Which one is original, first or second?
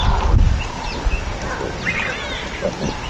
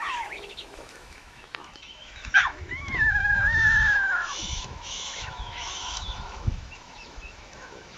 first